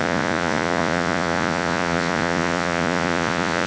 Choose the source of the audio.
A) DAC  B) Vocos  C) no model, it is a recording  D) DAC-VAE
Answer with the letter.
B